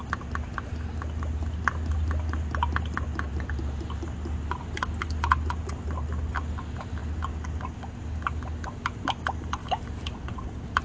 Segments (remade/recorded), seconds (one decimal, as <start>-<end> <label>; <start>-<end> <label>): 0.0-10.8 recorded